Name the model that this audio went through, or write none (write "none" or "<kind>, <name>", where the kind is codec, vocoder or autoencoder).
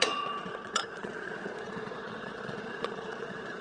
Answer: vocoder, Vocos